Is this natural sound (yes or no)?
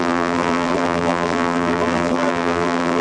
no